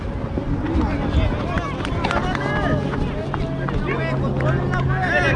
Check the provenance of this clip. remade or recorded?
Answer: recorded